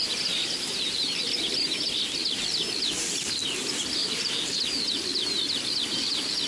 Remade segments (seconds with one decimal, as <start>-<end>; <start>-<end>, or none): 4.0-4.6